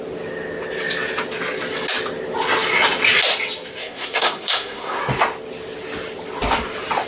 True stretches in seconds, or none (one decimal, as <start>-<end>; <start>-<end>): 0.0-3.8; 5.0-7.1